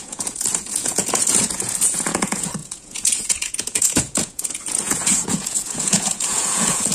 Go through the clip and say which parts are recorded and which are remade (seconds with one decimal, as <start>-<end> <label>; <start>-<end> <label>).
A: 0.0-6.9 remade